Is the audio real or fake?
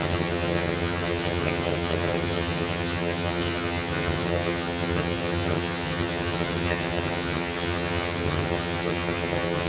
fake